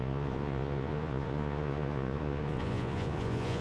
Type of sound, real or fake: fake